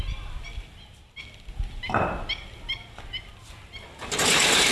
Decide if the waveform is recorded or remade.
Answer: recorded